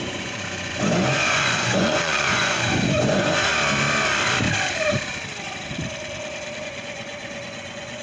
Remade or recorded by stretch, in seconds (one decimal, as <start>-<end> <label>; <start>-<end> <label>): 0.0-3.5 remade; 3.5-6.6 recorded; 6.6-8.0 remade